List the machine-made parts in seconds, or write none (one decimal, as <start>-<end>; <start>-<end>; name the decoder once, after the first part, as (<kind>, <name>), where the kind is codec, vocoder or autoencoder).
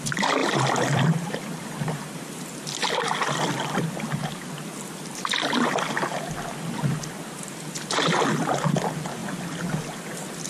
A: 0.4-1.6 (vocoder, BigVGAN v2)